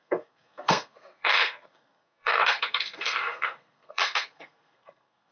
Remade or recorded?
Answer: remade